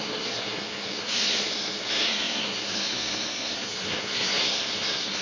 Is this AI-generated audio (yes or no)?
yes